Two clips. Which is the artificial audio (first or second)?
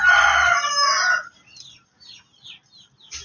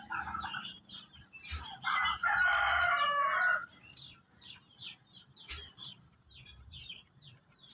second